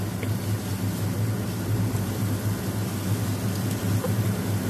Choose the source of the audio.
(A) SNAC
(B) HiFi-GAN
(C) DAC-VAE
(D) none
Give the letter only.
D